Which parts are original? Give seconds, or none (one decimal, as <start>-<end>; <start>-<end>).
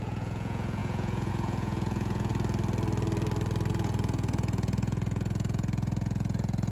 2.3-3.7